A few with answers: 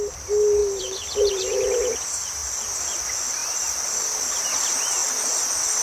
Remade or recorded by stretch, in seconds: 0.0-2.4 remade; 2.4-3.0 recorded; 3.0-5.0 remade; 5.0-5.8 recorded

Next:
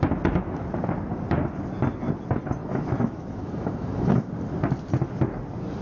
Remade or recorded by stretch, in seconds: 0.0-2.6 recorded; 2.6-4.3 remade; 4.3-5.8 recorded

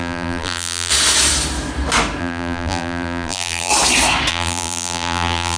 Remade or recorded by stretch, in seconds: 0.0-0.9 remade; 0.9-2.2 recorded; 2.2-3.7 remade; 3.7-4.3 recorded; 4.3-5.6 remade

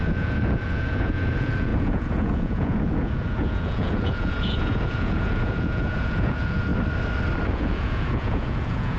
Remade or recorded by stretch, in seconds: 0.0-6.7 remade; 6.7-7.5 recorded; 7.5-9.0 remade

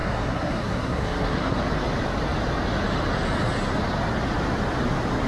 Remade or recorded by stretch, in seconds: 0.0-1.6 remade; 1.6-5.3 recorded

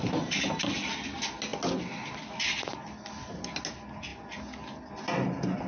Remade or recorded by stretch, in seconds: 0.0-5.7 recorded